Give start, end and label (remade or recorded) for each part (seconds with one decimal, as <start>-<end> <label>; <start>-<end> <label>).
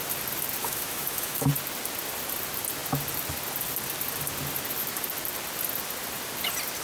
0.0-0.6 recorded; 0.6-1.5 remade; 1.5-6.8 recorded